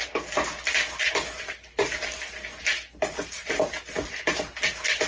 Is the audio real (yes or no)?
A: yes